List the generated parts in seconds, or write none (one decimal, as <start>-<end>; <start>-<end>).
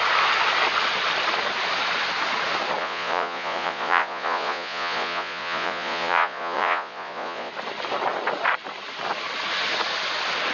2.8-7.5